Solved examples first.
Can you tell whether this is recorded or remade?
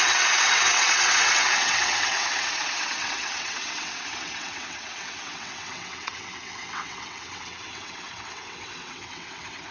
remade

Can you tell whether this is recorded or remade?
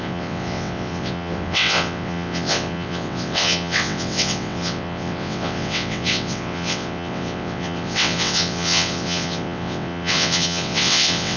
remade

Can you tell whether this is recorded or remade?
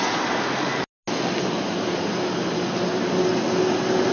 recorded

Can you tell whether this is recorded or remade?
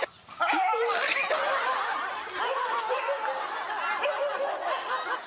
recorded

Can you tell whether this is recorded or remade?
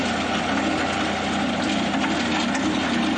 recorded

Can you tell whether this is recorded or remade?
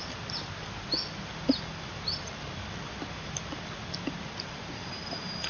recorded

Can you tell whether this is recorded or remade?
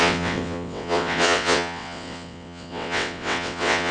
remade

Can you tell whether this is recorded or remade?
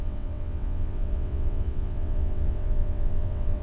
remade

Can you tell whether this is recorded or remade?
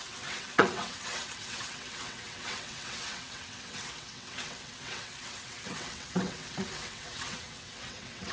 remade